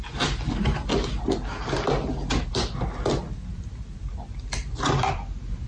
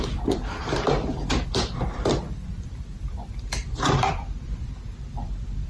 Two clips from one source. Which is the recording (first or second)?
first